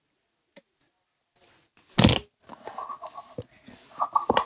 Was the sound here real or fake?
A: real